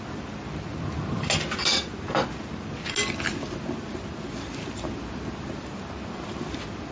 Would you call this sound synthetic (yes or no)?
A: no